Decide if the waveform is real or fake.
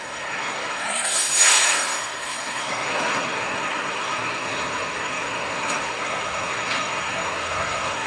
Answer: fake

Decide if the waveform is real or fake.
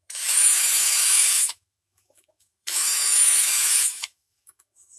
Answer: fake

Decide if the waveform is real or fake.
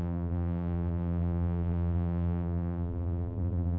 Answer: fake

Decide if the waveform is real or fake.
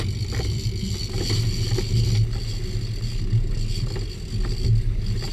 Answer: real